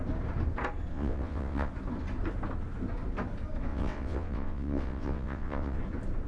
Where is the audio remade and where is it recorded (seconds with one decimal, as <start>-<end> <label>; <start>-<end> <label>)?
0.0-0.9 recorded; 0.9-1.7 remade; 1.7-3.7 recorded; 3.7-5.8 remade; 5.8-6.3 recorded